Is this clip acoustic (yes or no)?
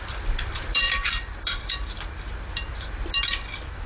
no